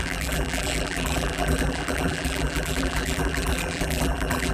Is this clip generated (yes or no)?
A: yes